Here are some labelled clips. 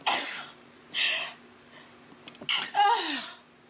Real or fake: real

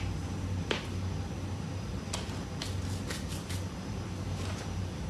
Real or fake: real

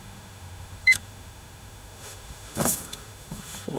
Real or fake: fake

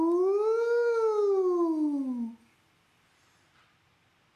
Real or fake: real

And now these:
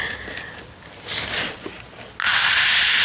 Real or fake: real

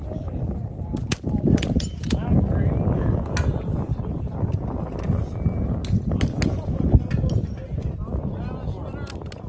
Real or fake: real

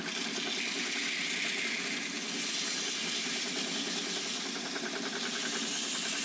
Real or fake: real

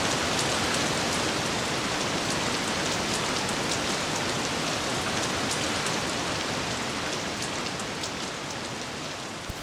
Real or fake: real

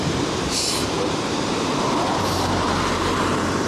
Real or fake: fake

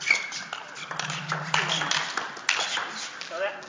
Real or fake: real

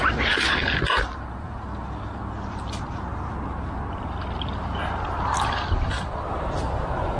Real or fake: real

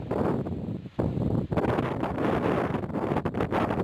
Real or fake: real